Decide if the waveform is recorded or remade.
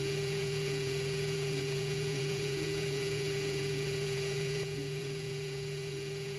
remade